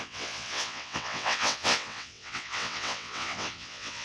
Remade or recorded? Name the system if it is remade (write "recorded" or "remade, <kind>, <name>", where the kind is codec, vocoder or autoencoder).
remade, vocoder, WaveNeXt